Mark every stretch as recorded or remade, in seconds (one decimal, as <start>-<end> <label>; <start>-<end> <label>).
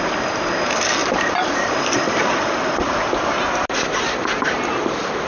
0.0-1.0 recorded; 1.0-2.6 remade; 2.6-5.3 recorded